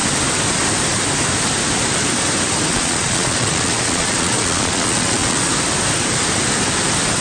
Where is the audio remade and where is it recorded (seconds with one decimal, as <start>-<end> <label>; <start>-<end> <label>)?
0.0-2.7 recorded; 2.7-5.5 remade; 5.5-7.2 recorded